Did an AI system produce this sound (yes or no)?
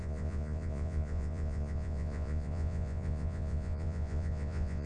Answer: yes